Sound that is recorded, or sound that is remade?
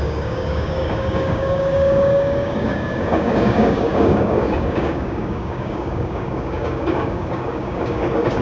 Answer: remade